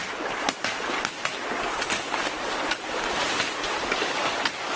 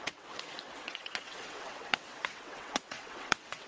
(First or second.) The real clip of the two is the first